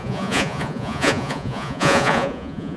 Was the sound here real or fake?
fake